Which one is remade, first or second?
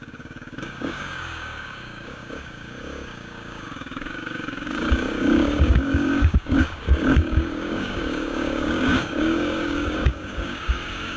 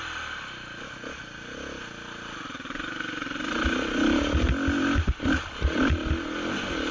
first